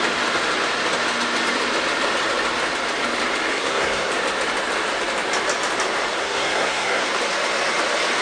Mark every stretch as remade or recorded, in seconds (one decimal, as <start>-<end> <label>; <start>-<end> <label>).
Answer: 0.0-3.5 recorded; 3.5-4.1 remade; 4.1-6.2 recorded; 6.2-7.1 remade; 7.1-8.2 recorded